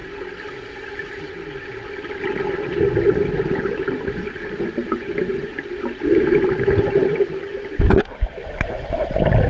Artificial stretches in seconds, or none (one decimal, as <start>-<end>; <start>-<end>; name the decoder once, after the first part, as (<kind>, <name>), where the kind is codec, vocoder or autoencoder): 4.6-5.5 (vocoder, Vocos)